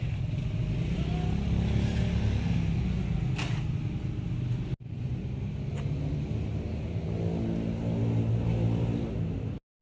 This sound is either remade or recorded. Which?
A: recorded